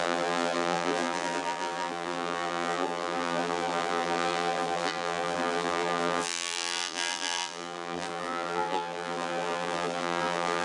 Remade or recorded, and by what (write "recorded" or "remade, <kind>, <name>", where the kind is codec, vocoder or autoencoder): remade, vocoder, BigVGAN v2